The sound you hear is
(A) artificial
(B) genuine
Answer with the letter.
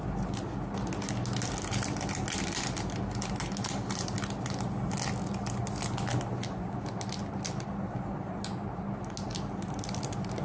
B